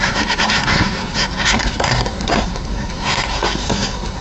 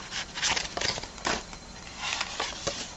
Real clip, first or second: second